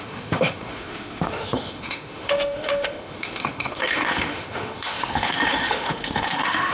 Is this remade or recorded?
remade